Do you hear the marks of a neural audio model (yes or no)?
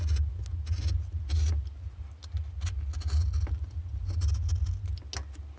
no